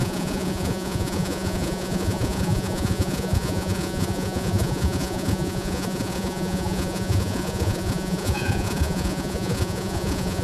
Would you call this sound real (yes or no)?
no